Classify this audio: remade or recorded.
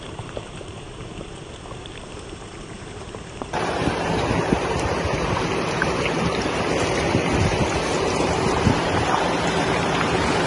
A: remade